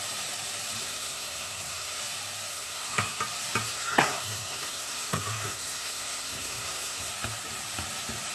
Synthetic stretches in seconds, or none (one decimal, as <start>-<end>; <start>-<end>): 0.8-2.0; 2.5-3.2; 3.6-7.1